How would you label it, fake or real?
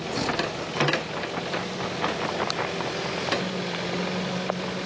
real